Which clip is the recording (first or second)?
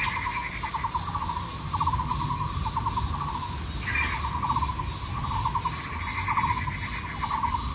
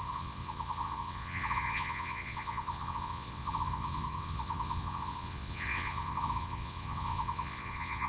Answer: first